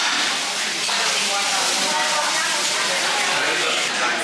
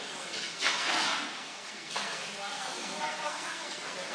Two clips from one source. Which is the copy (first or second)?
second